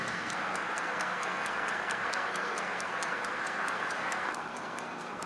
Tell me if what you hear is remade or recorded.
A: remade